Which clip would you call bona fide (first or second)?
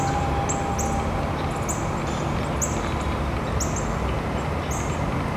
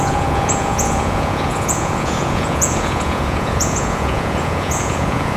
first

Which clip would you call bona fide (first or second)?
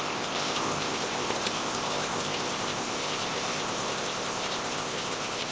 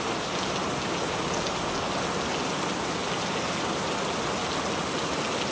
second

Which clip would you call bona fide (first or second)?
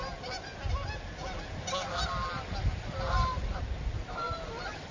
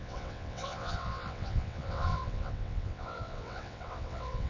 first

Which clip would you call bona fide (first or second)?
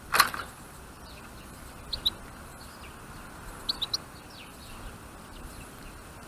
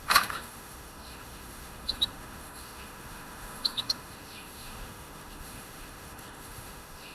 first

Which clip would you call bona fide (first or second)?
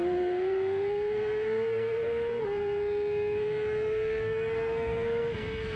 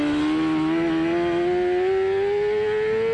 second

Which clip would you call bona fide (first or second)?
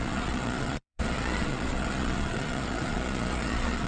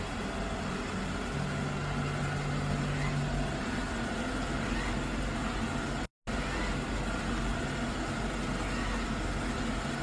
second